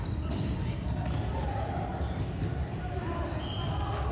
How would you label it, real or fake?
real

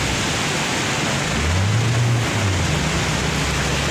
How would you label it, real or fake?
real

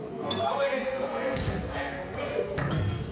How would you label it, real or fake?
fake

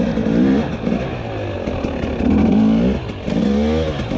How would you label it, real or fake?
real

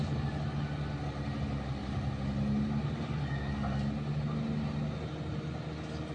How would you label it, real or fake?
real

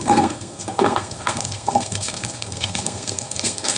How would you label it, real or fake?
fake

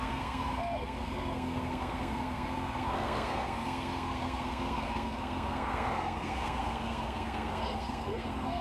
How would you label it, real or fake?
fake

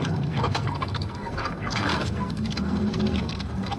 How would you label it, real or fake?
fake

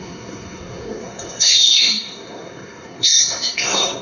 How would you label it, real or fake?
fake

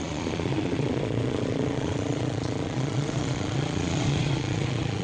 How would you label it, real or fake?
fake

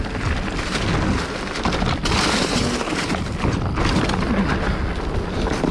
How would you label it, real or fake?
real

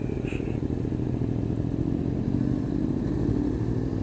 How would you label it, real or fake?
real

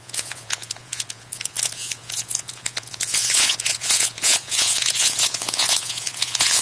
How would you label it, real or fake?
fake